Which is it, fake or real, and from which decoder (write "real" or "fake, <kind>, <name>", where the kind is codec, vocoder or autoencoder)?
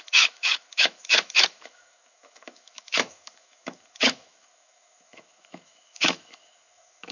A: fake, autoencoder, DAC-VAE